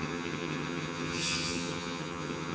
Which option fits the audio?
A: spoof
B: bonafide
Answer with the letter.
A